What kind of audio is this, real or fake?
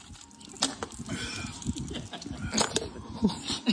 real